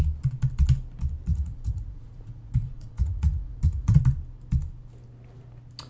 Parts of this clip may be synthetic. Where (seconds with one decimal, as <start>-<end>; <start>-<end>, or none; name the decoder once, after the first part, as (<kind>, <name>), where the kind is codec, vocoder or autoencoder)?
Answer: 1.3-4.0 (vocoder, Vocos)